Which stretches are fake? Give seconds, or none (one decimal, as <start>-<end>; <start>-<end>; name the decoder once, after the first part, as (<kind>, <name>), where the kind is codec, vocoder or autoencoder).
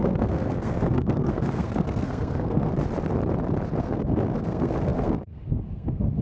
0.0-2.7 (codec, SNAC); 3.8-6.2